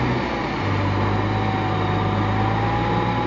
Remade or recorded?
recorded